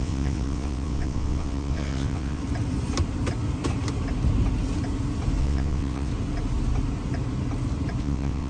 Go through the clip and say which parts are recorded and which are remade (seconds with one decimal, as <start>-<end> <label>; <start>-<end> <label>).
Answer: 0.0-2.4 remade; 2.4-5.4 recorded; 5.4-6.1 remade; 6.1-8.0 recorded; 8.0-8.5 remade

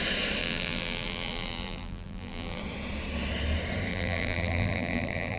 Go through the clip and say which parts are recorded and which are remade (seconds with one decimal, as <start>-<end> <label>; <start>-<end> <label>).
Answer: 0.0-0.4 recorded; 0.4-2.6 remade; 2.6-3.9 recorded; 3.9-5.4 remade

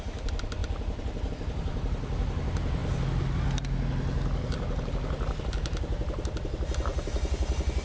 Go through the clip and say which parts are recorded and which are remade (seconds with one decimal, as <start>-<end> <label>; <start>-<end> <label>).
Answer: 0.0-7.8 recorded